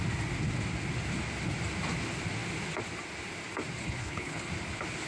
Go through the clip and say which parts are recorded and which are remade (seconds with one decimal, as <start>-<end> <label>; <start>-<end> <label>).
0.0-3.8 recorded; 3.8-4.5 remade; 4.5-5.1 recorded